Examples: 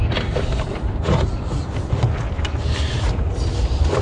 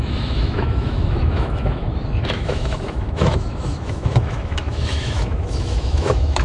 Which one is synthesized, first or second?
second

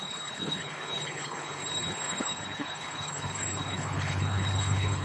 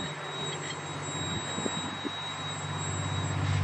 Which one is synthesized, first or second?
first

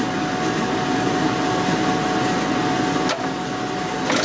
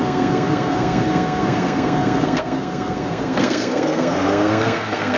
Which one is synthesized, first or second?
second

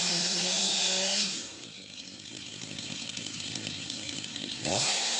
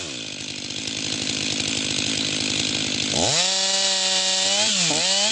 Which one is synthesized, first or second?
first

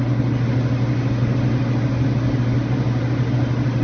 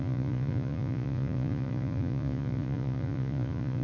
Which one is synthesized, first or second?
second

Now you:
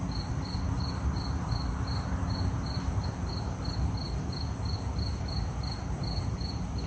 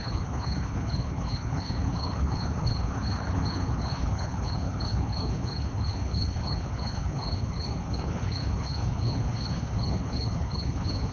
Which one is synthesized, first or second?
second